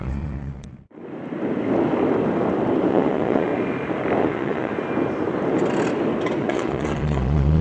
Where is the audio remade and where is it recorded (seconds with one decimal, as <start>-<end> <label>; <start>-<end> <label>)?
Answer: 0.0-1.0 remade; 1.0-2.9 recorded; 2.9-3.5 remade; 3.5-4.2 recorded; 4.2-4.7 remade; 4.7-6.4 recorded; 6.4-7.6 remade